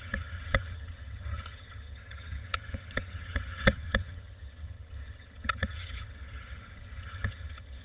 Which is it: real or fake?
fake